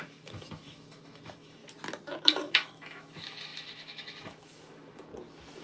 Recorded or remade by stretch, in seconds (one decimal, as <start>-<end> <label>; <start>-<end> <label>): 0.0-1.6 remade; 1.6-2.2 recorded; 2.2-5.1 remade; 5.1-5.6 recorded